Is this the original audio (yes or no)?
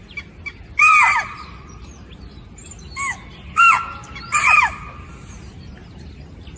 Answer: yes